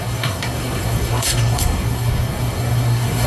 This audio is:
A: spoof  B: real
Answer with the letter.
A